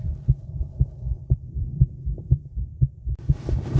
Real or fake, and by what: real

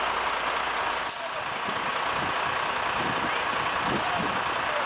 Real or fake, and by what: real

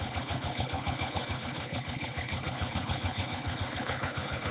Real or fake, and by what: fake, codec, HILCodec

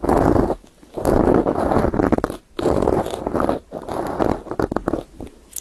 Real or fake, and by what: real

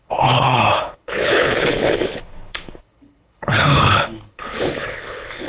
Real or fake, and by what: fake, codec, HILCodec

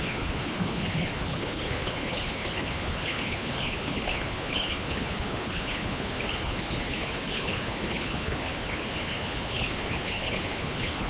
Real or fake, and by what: fake, codec, HILCodec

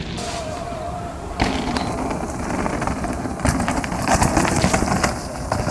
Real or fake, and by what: real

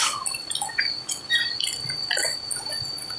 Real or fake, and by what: real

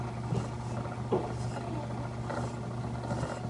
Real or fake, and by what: real